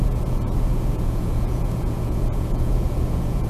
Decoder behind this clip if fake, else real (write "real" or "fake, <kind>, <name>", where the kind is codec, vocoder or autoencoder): fake, vocoder, Vocos